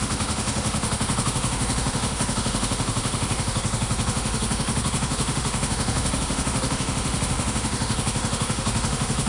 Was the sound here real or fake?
fake